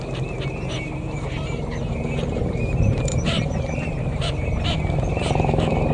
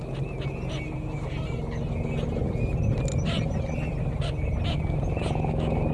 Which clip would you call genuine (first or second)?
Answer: second